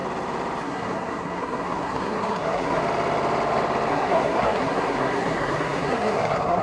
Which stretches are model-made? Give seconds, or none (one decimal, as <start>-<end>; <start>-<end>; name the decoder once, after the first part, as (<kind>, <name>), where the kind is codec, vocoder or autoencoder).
0.6-2.8 (codec, SNAC); 3.9-6.6